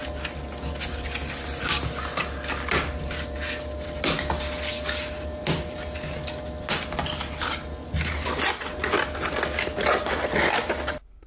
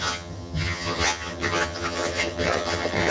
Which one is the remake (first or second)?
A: second